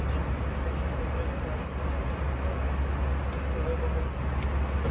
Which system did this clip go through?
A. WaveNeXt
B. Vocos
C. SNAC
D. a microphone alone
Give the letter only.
D